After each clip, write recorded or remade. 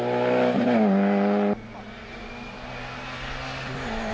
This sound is recorded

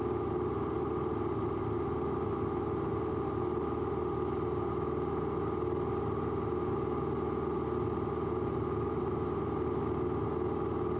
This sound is recorded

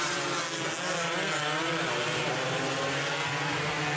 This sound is recorded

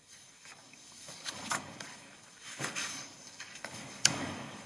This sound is remade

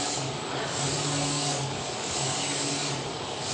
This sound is remade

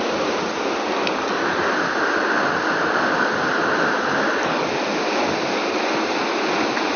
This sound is recorded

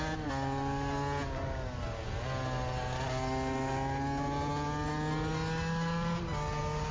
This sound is recorded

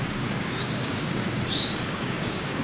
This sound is remade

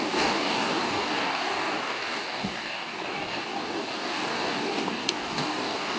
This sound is remade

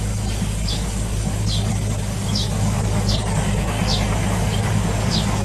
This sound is remade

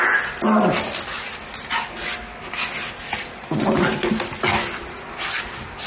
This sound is recorded